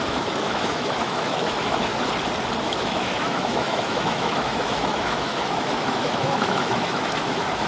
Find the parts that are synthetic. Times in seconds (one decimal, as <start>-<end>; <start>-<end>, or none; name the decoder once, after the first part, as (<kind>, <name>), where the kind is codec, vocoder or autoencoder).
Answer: 0.0-1.9 (autoencoder, DAC-VAE); 2.6-7.7